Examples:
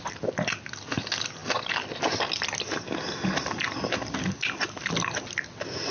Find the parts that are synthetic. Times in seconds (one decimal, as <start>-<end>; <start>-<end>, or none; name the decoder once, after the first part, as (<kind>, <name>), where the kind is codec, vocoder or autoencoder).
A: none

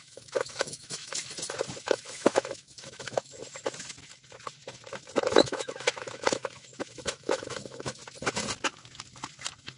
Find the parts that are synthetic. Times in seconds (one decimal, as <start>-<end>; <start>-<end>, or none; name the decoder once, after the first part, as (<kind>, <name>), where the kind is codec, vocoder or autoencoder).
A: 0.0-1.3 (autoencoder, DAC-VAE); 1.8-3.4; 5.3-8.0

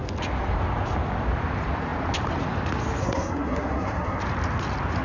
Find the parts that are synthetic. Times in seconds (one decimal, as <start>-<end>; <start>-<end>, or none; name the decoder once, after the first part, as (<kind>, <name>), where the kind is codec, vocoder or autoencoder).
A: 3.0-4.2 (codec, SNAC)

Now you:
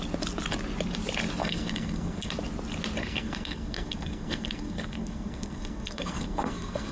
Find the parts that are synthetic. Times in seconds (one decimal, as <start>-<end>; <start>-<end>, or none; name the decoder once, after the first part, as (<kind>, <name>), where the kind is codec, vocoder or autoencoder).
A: 1.4-2.3 (codec, SNAC); 3.0-6.9

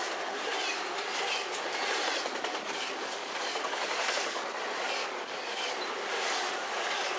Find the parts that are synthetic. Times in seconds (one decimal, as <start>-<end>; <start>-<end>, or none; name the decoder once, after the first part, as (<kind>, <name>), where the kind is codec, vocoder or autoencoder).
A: 2.5-4.4 (codec, DAC); 5.0-5.8